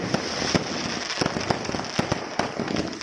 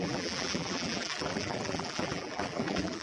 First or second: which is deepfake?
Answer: second